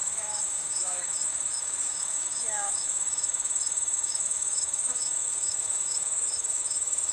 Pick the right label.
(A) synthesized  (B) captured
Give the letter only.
A